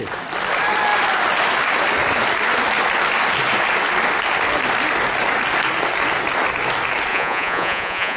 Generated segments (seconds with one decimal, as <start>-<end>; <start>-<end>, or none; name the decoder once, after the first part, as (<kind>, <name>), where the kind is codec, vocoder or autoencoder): 7.1-8.2 (vocoder, Vocos)